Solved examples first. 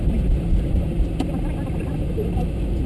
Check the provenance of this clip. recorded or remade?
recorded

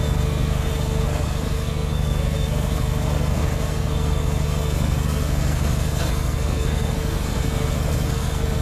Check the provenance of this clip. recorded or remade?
remade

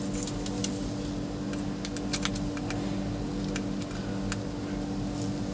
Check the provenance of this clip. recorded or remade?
recorded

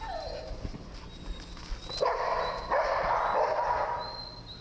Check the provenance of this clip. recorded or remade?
recorded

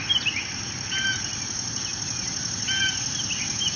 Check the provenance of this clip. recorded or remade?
recorded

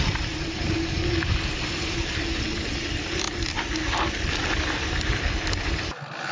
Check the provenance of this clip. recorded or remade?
recorded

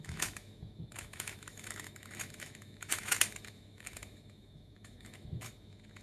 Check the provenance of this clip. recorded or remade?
remade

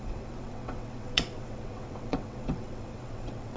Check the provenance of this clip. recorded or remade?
remade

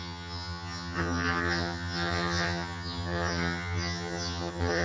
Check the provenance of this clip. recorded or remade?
remade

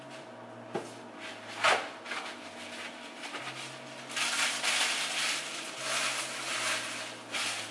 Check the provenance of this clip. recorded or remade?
recorded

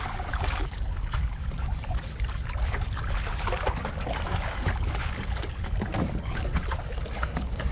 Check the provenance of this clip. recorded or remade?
remade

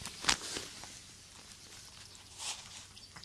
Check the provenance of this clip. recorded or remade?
recorded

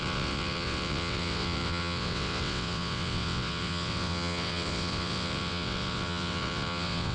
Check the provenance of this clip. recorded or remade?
remade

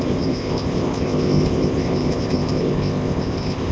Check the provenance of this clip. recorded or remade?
remade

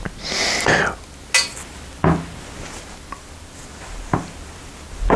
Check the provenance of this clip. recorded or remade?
recorded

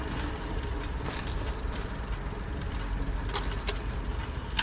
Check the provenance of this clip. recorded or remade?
recorded